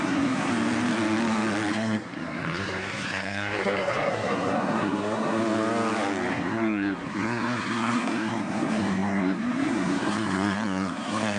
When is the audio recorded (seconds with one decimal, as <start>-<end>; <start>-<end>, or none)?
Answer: 0.5-1.7; 5.4-6.3